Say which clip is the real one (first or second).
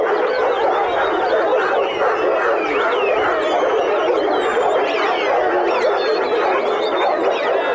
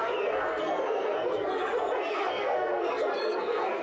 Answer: first